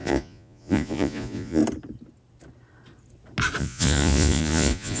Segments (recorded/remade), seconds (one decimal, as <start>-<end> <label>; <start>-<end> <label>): 0.0-1.6 remade; 1.6-3.6 recorded; 3.6-5.0 remade